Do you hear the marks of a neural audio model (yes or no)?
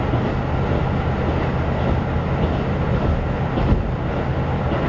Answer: no